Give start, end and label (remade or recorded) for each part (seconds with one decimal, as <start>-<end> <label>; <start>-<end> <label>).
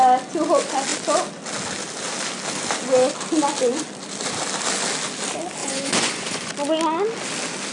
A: 0.0-5.6 recorded; 5.6-6.5 remade; 6.5-7.7 recorded